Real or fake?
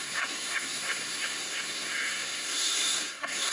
fake